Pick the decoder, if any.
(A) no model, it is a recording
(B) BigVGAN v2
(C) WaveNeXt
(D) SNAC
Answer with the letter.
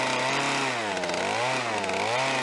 A